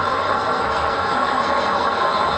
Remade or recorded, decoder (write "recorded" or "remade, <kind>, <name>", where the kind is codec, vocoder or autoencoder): remade, codec, SNAC